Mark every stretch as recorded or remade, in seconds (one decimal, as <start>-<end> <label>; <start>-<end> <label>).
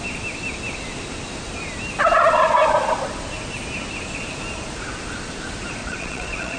0.0-5.8 recorded; 5.8-6.6 remade